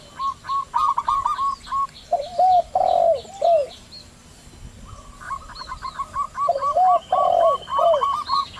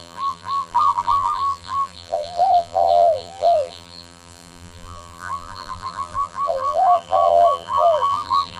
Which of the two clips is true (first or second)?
first